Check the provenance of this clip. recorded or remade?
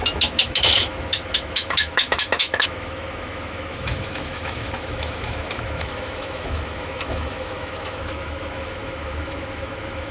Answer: remade